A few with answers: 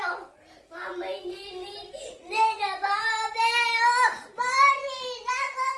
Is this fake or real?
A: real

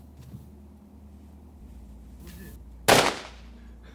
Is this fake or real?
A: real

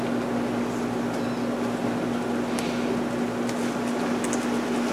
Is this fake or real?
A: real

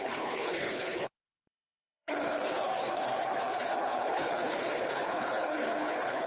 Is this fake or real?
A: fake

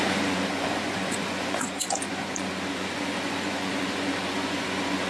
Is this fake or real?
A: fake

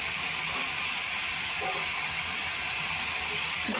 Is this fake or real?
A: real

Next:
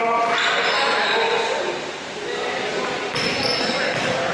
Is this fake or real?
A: real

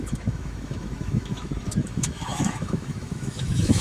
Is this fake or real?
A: fake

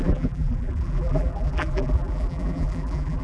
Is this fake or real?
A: fake